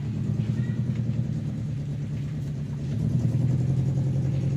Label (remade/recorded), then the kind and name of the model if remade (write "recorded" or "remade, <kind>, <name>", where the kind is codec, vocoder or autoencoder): remade, vocoder, BigVGAN v2